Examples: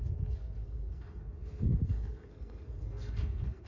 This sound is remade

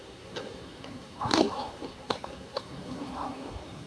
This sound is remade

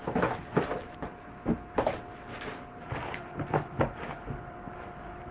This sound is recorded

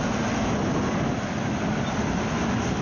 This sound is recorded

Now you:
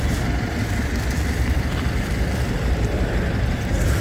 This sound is recorded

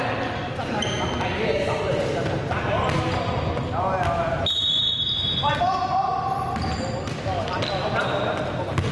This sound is recorded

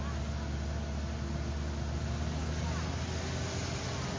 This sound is recorded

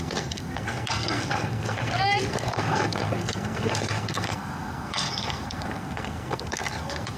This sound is remade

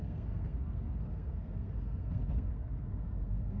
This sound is remade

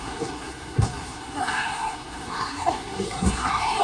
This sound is remade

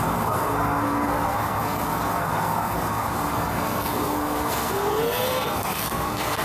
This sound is remade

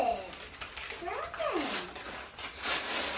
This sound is recorded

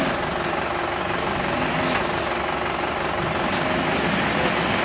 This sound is recorded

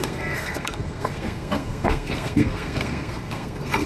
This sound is remade